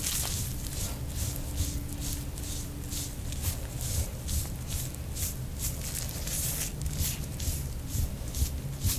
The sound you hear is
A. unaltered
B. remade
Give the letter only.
A